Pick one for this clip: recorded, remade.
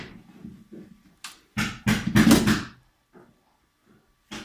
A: recorded